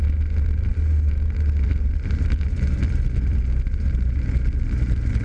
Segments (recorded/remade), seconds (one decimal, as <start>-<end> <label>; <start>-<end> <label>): 0.0-5.2 recorded